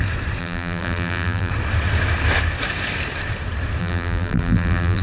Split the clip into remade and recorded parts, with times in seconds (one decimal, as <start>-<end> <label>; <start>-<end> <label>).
0.0-0.4 recorded; 0.4-1.5 remade; 1.5-3.8 recorded; 3.8-5.0 remade